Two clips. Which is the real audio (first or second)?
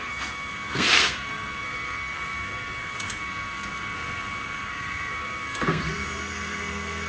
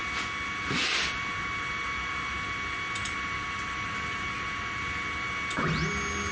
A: second